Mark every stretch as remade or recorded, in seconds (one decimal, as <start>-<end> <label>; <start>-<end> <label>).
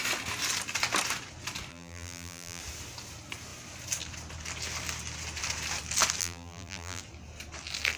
0.0-1.7 recorded; 1.7-2.6 remade; 2.6-6.2 recorded; 6.2-7.0 remade; 7.0-8.0 recorded